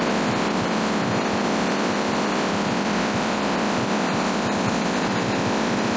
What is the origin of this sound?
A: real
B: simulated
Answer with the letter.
A